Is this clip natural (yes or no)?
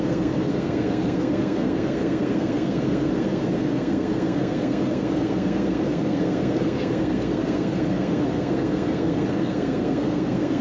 no